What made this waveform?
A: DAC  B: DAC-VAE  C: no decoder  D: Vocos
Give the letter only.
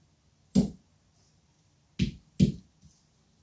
C